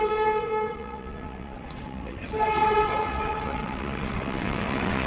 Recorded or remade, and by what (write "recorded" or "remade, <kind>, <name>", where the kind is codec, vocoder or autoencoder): remade, vocoder, WaveNeXt